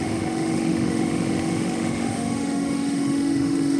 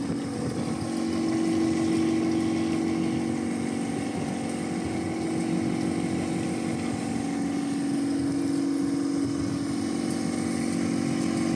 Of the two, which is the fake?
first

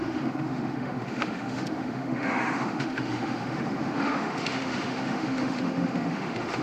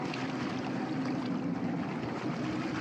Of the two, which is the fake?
first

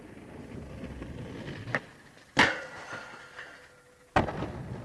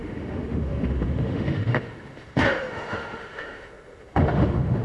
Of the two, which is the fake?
second